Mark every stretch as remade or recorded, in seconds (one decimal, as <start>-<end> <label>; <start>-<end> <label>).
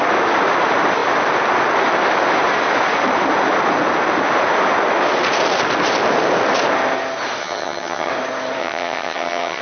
0.0-7.4 recorded; 7.4-8.1 remade; 8.1-8.6 recorded; 8.6-9.6 remade